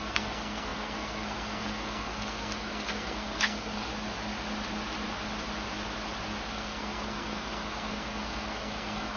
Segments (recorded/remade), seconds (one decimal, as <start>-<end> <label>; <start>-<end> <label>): 0.0-3.9 remade; 3.9-6.5 recorded; 6.5-9.2 remade